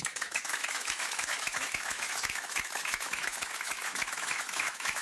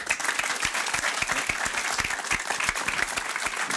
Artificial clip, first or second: first